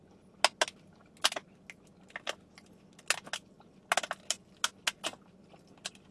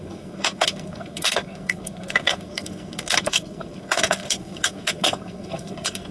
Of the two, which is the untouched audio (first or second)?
first